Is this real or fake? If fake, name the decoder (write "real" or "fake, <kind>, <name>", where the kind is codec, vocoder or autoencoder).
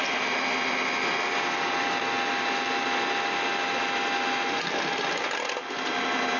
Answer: real